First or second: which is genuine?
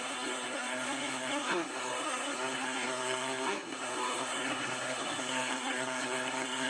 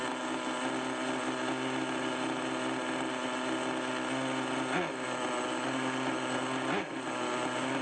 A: second